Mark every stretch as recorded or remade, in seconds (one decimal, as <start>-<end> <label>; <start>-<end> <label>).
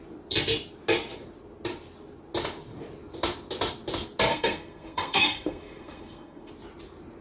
0.0-4.3 recorded; 4.3-6.5 remade; 6.5-7.2 recorded